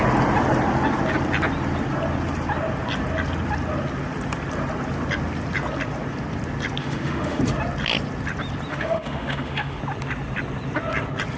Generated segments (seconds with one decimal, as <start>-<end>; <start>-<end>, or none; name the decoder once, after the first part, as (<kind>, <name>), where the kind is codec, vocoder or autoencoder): 6.8-7.4 (autoencoder, DAC-VAE); 8.7-9.8